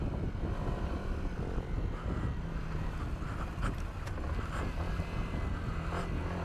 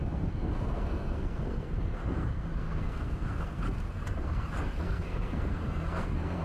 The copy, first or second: second